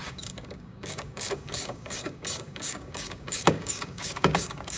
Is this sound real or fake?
fake